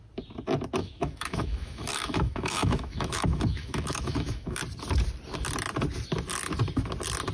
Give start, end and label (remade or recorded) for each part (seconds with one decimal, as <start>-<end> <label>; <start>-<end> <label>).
0.0-0.8 recorded; 0.8-4.6 remade; 4.6-7.3 recorded